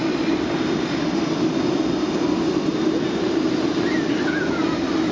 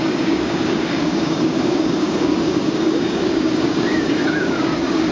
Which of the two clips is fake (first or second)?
second